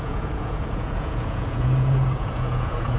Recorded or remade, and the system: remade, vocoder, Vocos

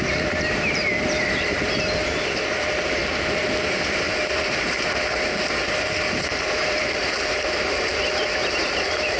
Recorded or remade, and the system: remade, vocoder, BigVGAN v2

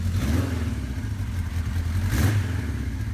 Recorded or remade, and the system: recorded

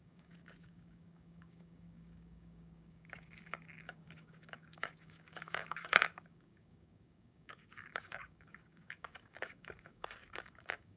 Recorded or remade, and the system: remade, codec, DAC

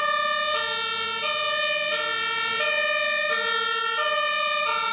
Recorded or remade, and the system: recorded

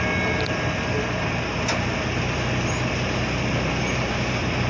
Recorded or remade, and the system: recorded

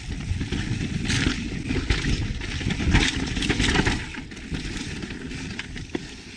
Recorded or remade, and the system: recorded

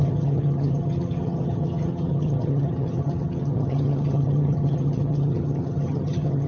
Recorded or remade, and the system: remade, vocoder, HiFi-GAN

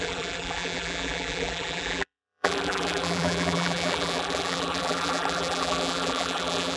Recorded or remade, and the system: remade, vocoder, BigVGAN v2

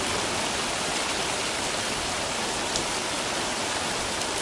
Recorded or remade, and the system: recorded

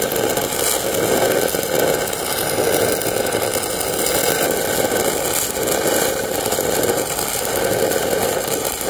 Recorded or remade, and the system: recorded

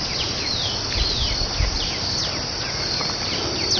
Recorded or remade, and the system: recorded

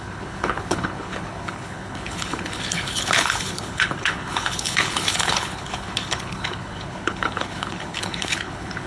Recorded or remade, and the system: remade, codec, HILCodec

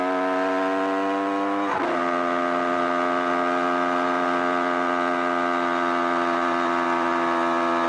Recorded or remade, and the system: recorded